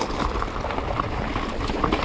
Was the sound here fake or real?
real